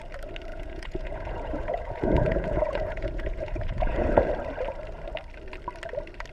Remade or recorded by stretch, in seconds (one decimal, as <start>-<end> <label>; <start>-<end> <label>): 0.0-0.5 recorded; 0.5-4.3 remade; 4.3-6.3 recorded